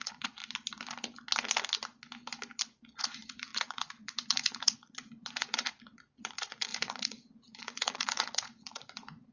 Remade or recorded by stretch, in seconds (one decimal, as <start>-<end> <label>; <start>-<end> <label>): 0.0-0.4 remade; 0.4-3.0 recorded; 3.0-9.3 remade